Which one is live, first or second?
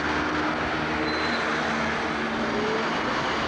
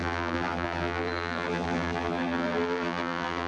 first